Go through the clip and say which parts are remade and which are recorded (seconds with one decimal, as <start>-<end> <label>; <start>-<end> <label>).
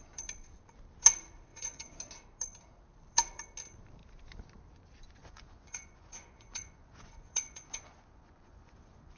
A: 0.0-1.5 recorded; 1.5-2.0 remade; 2.0-5.2 recorded; 5.2-9.2 remade